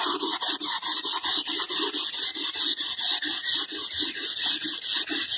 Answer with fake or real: real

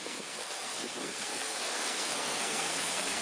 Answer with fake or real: fake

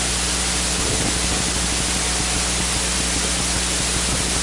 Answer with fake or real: real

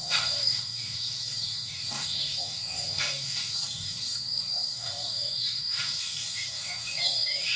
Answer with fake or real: fake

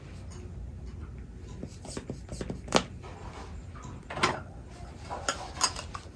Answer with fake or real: real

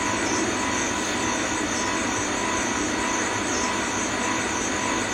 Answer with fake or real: real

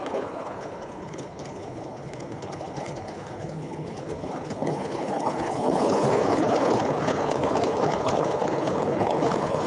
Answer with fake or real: fake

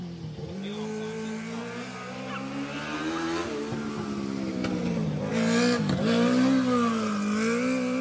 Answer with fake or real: real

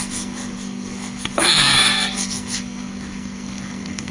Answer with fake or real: fake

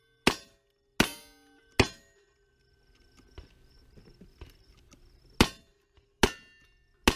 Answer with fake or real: real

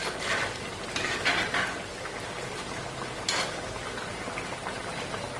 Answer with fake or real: real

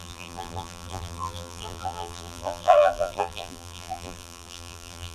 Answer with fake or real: fake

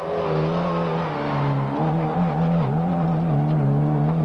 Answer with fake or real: real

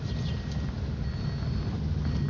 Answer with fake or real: real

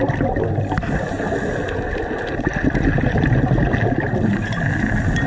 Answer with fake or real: real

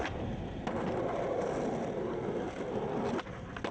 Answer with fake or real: real